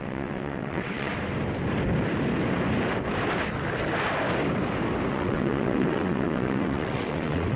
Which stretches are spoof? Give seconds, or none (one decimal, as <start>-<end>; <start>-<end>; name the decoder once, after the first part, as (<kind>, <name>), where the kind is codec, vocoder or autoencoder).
0.0-1.1 (vocoder, WaveNeXt); 5.1-7.6